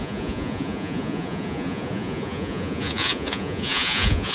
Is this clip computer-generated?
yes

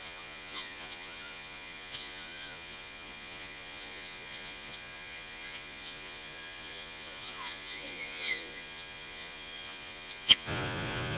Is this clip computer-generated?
yes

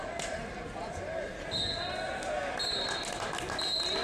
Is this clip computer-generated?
no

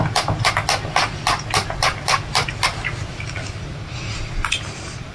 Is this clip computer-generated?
no